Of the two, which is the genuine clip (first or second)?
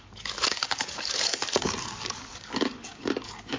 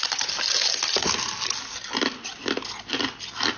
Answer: second